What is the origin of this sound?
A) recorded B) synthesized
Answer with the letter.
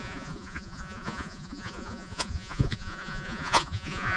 B